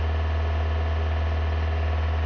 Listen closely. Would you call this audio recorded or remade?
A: recorded